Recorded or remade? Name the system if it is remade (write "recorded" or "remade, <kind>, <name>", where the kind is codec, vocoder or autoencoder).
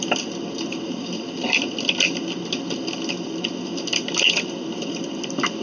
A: recorded